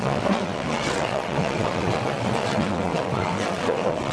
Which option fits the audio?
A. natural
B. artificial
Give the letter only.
B